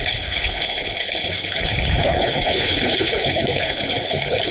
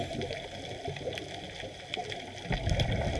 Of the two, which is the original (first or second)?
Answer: second